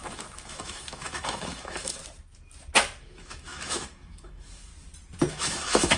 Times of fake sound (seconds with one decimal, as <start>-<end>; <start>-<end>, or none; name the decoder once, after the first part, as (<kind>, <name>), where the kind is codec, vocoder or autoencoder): 0.0-2.0 (autoencoder, DAC-VAE); 3.0-4.7; 5.3-6.0